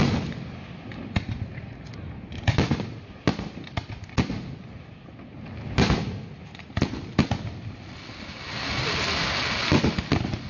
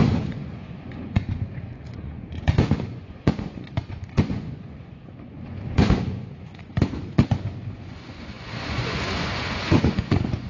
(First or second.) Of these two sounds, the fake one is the second